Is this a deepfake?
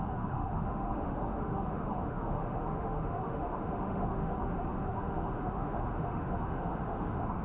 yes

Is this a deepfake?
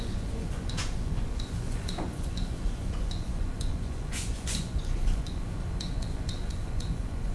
yes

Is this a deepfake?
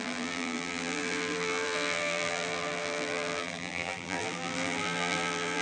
yes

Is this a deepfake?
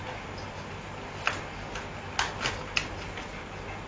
no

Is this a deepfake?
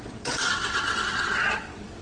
yes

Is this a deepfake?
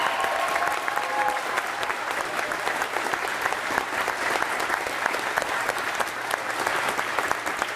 no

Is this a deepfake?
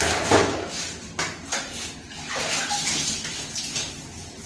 yes